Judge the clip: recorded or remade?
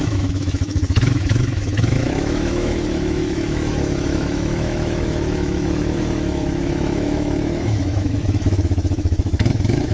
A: remade